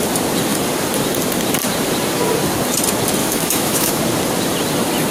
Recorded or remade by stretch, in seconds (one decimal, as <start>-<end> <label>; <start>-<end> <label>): 0.0-3.2 recorded; 3.2-4.0 remade; 4.0-5.1 recorded